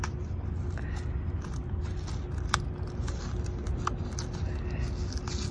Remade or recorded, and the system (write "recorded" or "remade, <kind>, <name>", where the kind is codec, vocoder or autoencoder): recorded